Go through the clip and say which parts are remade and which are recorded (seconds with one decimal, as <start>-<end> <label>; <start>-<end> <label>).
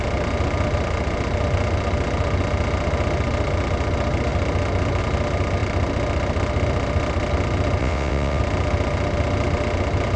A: 0.0-7.8 recorded; 7.8-8.4 remade; 8.4-10.2 recorded